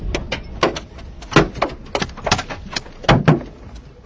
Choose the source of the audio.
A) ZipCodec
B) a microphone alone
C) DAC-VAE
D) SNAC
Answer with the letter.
B